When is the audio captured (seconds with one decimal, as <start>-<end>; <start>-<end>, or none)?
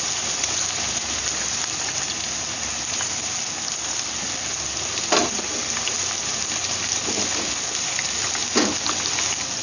0.0-9.6